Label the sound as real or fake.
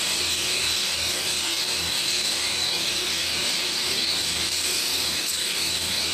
fake